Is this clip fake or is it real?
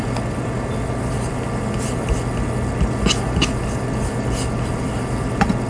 real